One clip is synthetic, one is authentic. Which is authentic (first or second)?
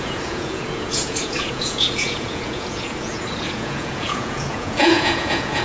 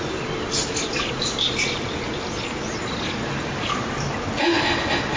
second